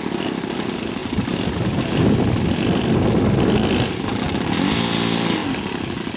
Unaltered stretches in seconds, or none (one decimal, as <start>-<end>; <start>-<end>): 0.0-6.2